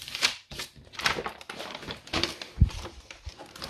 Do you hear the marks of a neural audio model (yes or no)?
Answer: yes